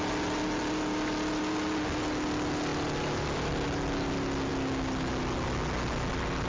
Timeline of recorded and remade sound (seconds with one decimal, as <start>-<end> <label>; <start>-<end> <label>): 0.0-6.5 recorded